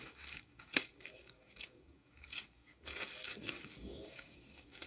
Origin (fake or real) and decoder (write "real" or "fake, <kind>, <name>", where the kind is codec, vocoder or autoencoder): fake, codec, DAC